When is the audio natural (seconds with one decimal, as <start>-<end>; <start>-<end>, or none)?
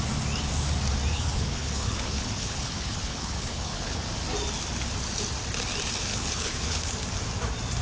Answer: 0.0-1.1; 4.0-6.1; 6.9-7.8